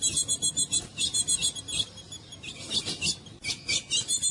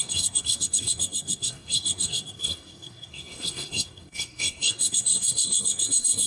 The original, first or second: first